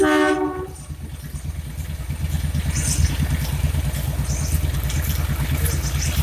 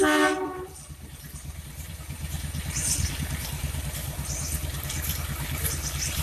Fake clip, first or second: second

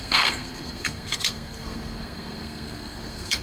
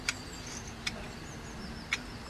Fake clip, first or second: first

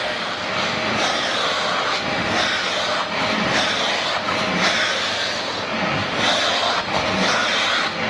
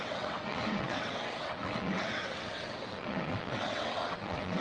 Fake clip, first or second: second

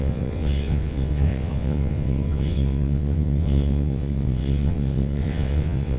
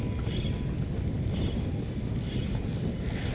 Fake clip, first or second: first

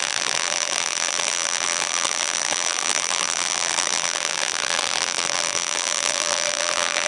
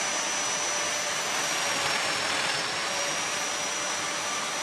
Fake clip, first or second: first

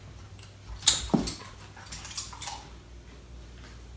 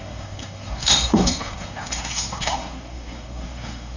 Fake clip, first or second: second